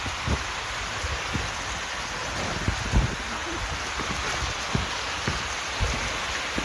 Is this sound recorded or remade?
recorded